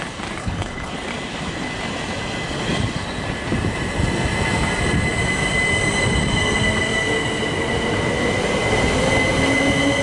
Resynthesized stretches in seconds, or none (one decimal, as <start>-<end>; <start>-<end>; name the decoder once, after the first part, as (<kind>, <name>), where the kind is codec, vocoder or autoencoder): 0.4-0.9 (codec, HILCodec)